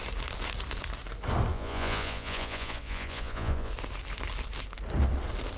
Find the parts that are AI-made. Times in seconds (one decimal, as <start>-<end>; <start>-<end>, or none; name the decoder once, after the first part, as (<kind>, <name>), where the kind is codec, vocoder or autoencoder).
1.5-3.7 (vocoder, Vocos)